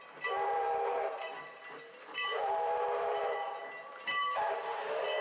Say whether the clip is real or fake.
fake